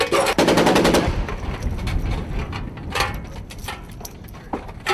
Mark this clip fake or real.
real